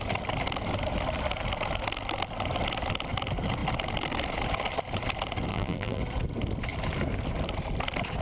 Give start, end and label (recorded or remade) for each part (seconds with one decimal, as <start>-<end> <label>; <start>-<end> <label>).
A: 0.0-5.5 recorded; 5.5-6.0 remade; 6.0-8.2 recorded